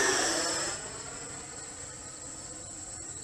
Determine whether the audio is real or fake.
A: real